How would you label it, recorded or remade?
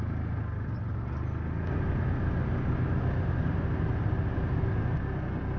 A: recorded